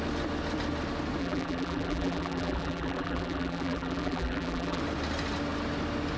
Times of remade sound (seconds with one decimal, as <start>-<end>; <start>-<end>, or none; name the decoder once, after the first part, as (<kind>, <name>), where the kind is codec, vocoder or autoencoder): 1.2-4.8 (vocoder, BigVGAN v2)